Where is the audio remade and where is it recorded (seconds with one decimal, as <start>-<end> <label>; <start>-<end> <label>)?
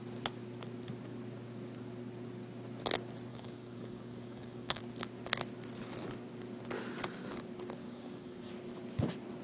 0.0-3.3 recorded; 3.3-4.8 remade; 4.8-7.8 recorded; 7.8-8.5 remade; 8.5-9.4 recorded